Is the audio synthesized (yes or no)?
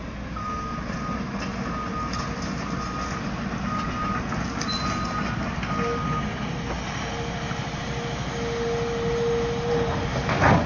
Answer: no